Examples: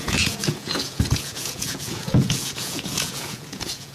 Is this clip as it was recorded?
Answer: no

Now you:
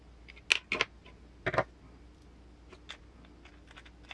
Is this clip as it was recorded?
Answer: yes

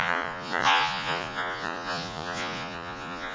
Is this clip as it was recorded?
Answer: no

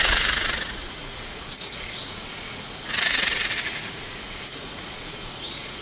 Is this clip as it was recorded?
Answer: no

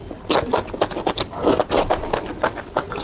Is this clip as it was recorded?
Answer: yes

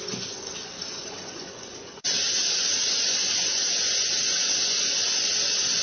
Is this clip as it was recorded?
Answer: no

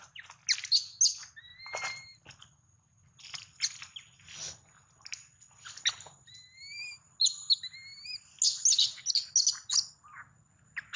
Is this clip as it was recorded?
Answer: yes